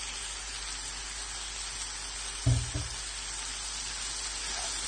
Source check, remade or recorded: recorded